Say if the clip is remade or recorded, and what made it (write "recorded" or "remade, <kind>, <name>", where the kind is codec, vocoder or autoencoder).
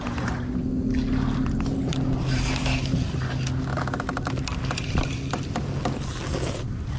recorded